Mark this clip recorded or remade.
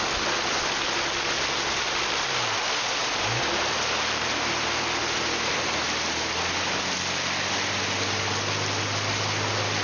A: recorded